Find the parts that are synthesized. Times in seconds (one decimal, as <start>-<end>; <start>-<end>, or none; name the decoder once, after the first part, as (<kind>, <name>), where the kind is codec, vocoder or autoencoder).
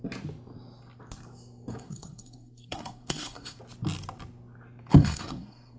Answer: 1.7-3.6 (codec, SNAC); 4.9-5.8